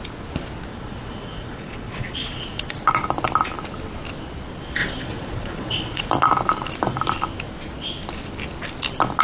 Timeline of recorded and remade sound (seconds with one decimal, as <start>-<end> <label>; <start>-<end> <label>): 0.0-0.7 recorded; 0.7-2.9 remade; 2.9-4.8 recorded; 4.8-6.1 remade; 6.1-9.2 recorded